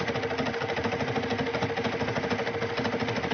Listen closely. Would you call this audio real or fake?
real